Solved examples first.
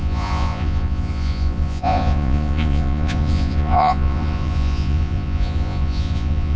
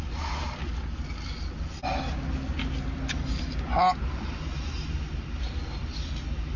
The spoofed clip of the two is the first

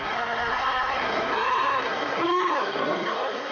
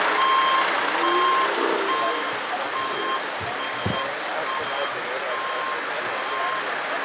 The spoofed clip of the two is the first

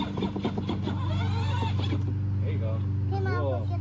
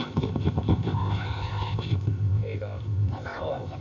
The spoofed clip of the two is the second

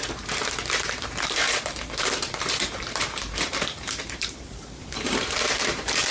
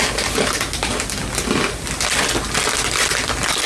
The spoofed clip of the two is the first